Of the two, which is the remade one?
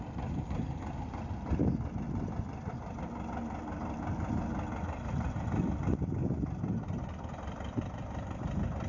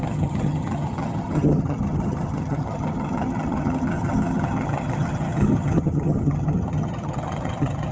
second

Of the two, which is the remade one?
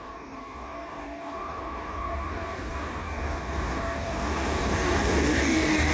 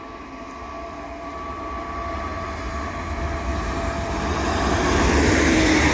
first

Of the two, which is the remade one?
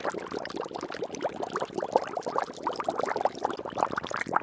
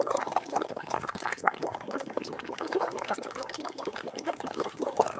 second